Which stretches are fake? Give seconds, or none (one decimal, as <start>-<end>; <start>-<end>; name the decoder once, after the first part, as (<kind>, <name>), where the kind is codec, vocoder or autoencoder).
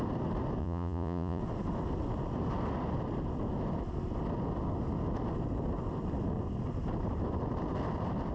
0.6-1.4 (vocoder, Vocos)